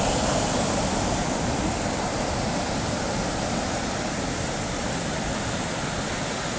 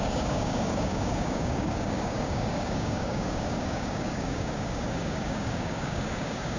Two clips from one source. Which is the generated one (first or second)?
second